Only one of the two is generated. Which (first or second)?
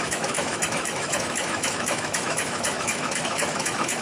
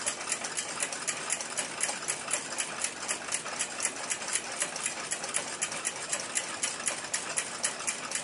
first